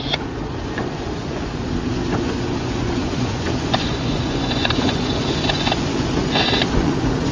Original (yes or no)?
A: no